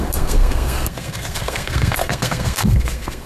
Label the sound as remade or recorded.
remade